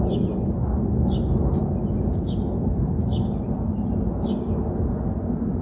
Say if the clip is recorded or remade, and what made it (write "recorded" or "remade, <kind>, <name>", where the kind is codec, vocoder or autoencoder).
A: recorded